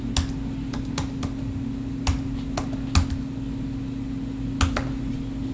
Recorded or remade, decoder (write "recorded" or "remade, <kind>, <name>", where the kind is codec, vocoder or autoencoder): recorded